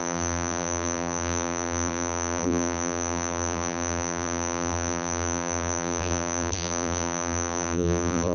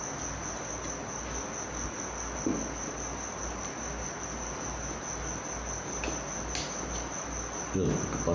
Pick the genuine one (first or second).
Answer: second